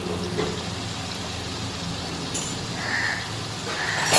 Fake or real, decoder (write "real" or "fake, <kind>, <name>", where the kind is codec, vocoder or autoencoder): real